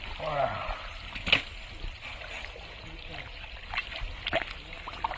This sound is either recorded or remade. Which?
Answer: recorded